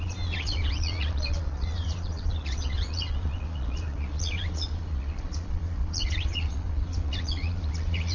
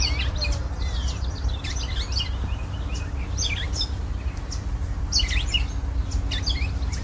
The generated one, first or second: first